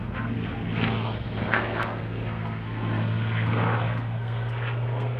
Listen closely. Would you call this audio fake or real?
fake